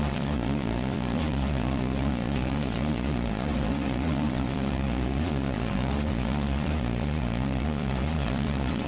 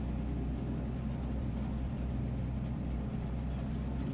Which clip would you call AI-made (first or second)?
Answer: first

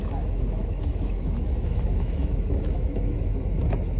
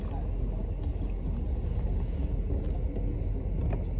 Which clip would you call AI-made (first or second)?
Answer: first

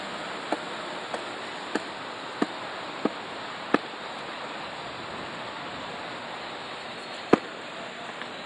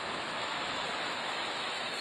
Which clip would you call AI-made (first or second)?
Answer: second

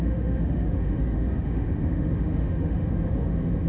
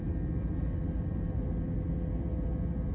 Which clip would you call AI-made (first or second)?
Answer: first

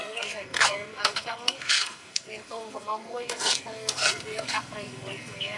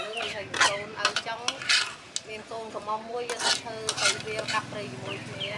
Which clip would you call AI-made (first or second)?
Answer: first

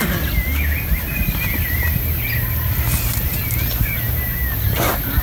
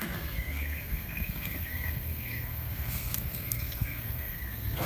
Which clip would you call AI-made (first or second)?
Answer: second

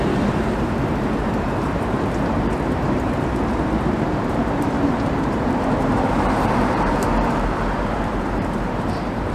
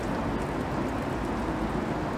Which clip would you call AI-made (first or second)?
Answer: first